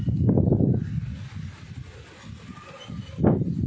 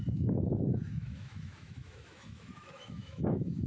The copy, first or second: second